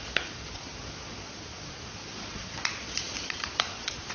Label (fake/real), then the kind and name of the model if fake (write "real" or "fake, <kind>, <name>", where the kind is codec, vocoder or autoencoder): fake, vocoder, Vocos